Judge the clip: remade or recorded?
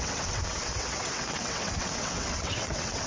remade